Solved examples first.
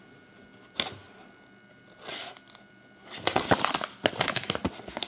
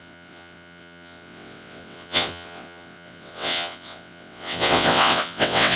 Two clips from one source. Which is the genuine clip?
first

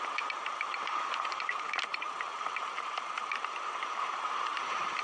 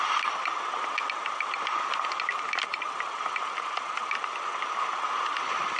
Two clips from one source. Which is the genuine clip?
second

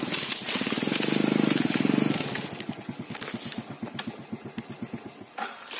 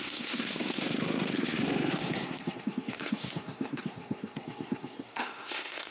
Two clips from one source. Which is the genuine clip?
first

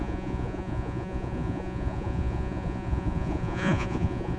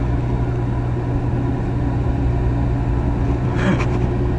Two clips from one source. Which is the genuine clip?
second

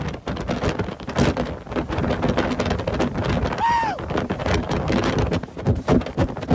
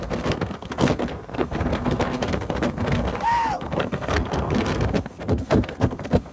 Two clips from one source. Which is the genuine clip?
first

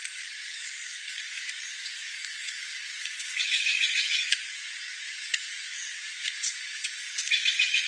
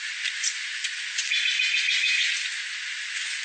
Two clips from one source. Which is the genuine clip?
second